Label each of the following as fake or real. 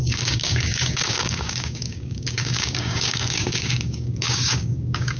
fake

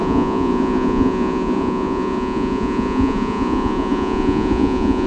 fake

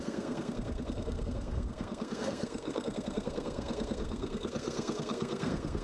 fake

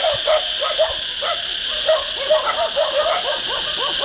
fake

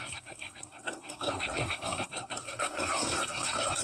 fake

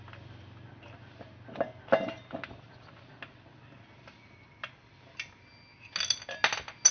real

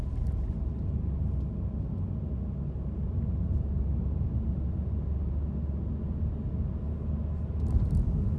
real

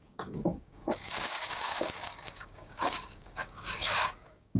fake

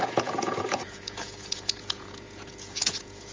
fake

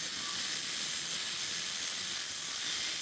real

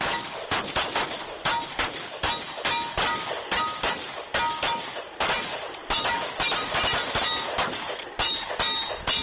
real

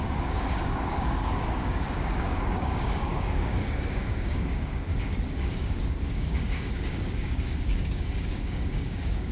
fake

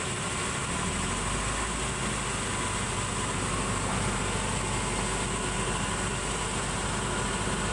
real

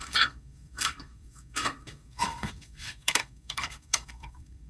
fake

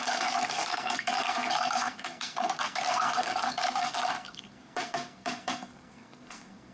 fake